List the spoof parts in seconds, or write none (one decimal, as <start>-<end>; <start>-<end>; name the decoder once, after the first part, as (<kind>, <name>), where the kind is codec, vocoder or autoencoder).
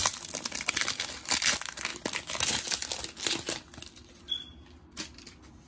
none